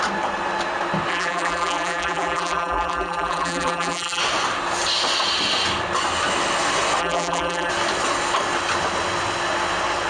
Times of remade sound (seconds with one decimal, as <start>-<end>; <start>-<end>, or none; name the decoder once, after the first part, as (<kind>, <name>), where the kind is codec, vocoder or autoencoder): 1.1-4.2 (vocoder, BigVGAN v2); 7.0-7.7